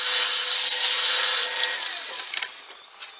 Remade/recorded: recorded